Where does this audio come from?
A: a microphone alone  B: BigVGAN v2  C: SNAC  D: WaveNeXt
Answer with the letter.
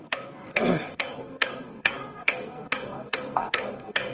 C